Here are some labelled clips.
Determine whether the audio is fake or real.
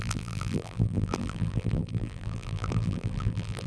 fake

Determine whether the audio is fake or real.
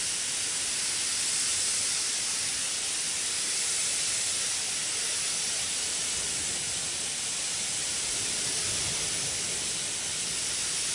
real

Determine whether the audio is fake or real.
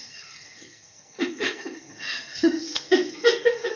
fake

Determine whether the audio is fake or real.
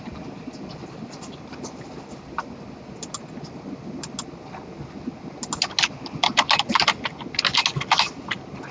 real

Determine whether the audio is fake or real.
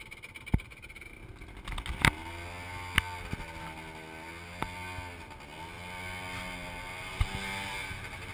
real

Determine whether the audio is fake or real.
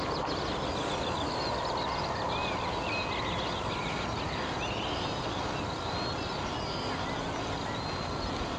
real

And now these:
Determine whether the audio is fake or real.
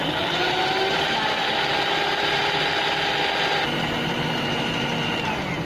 real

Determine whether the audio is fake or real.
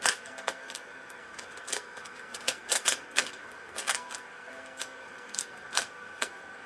fake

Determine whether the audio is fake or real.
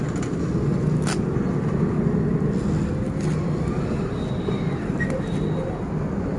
real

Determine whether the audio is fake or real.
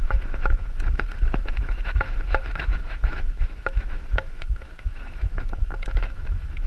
fake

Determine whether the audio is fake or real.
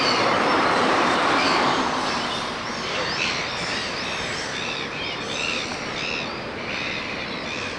fake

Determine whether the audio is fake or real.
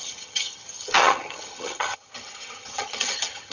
fake